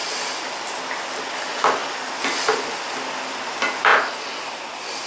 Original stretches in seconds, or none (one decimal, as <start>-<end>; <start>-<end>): 0.0-5.1